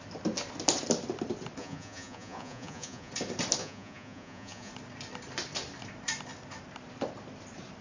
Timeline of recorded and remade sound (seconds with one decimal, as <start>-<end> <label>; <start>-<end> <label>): 0.0-1.6 recorded; 1.6-3.1 remade; 3.1-3.6 recorded; 3.6-4.7 remade; 4.7-7.8 recorded

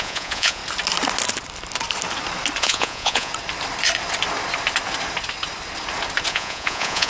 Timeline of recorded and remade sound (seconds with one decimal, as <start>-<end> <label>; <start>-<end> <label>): 0.0-0.6 remade; 0.6-2.6 recorded; 2.6-3.3 remade; 3.3-6.3 recorded; 6.3-7.1 remade

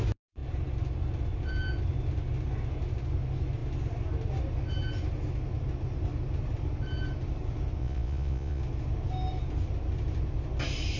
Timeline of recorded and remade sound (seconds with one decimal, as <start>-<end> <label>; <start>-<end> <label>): 0.0-7.8 recorded; 7.8-8.6 remade; 8.6-11.0 recorded